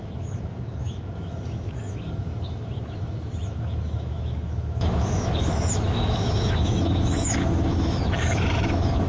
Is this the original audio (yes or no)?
no